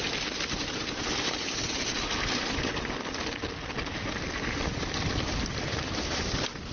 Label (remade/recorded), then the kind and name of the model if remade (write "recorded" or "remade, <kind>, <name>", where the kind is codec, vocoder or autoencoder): recorded